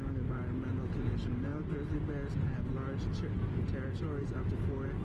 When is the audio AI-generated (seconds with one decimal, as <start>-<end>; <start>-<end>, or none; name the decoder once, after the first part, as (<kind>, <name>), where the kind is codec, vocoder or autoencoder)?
none